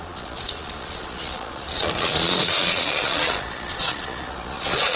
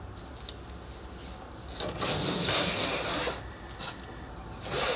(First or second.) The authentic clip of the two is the second